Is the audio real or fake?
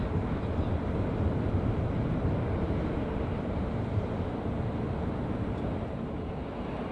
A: fake